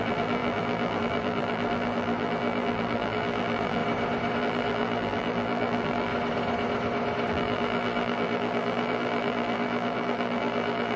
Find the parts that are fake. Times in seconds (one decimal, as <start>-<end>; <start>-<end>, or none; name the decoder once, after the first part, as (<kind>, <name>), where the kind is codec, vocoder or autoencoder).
0.0-3.8 (vocoder, BigVGAN v2); 4.4-6.1; 7.3-11.0